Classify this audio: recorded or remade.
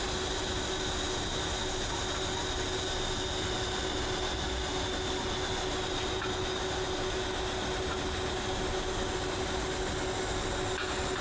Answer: recorded